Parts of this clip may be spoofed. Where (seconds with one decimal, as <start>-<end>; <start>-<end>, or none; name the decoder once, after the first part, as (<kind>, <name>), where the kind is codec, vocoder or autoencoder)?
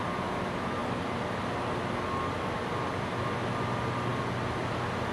none